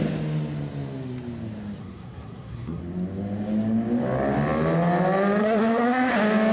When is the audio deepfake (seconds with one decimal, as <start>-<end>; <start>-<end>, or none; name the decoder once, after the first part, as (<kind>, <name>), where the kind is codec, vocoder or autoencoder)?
1.8-2.8 (codec, SNAC); 5.4-6.1